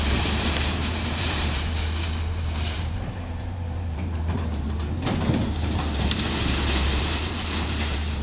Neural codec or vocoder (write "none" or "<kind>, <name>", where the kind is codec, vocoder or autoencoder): vocoder, BigVGAN v2